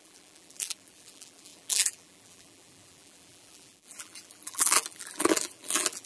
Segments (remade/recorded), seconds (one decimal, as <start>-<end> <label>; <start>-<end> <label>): 0.0-6.1 remade